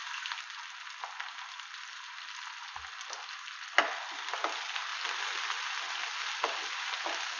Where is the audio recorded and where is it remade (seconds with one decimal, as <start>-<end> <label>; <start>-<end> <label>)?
0.0-7.4 recorded